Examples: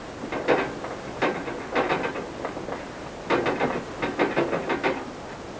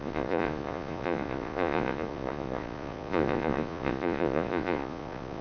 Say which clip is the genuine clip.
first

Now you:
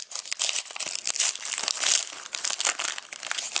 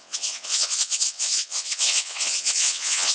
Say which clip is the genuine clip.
first